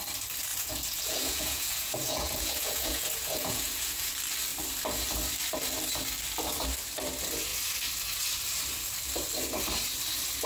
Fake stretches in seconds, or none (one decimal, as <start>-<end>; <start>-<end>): 0.5-4.1